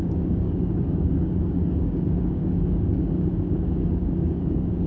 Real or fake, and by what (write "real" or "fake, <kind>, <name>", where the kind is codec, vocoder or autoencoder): fake, codec, DAC